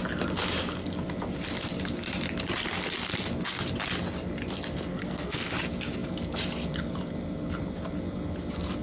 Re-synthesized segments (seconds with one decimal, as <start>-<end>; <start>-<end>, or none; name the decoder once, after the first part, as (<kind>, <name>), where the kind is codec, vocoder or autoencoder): 4.9-5.5 (codec, SNAC)